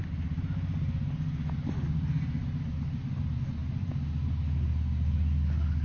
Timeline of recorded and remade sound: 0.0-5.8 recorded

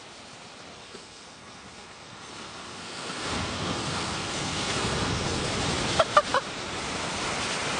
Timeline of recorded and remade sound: 0.0-0.8 recorded; 0.8-5.5 remade; 5.5-7.8 recorded

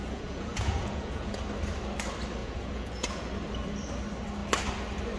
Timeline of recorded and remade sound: 0.0-1.4 remade; 1.4-2.4 recorded; 2.4-3.2 remade; 3.2-5.2 recorded

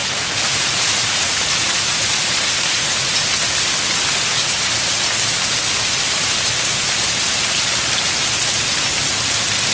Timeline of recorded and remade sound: 0.0-3.1 remade; 3.1-9.7 recorded

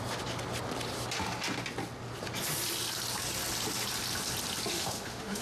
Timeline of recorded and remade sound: 0.0-4.7 recorded; 4.7-5.4 remade

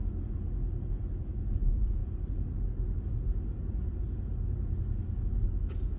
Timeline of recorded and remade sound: 0.0-6.0 recorded

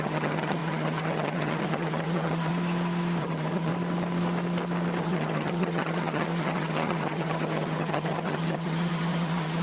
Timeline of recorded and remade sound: 0.0-2.5 remade; 2.5-3.2 recorded; 3.2-3.7 remade; 3.7-5.0 recorded; 5.0-9.6 remade